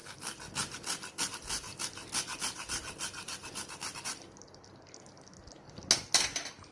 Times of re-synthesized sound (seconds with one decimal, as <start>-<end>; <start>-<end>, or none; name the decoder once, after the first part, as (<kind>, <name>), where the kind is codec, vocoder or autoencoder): none